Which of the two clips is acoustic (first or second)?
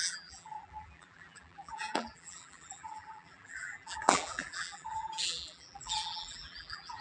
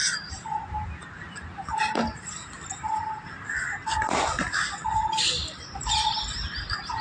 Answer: second